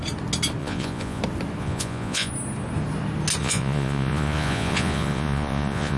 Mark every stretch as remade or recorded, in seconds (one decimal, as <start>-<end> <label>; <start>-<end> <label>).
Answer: 0.0-0.6 recorded; 0.6-1.2 remade; 1.2-1.6 recorded; 1.6-2.3 remade; 2.3-3.4 recorded; 3.4-6.0 remade